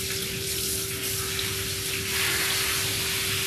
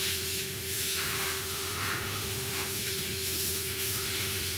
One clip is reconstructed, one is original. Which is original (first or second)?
first